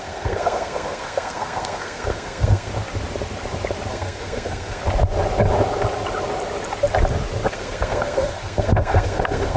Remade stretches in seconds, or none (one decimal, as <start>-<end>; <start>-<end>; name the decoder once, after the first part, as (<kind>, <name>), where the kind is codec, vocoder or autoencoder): 0.0-2.7 (codec, SNAC); 3.9-4.8; 7.5-9.6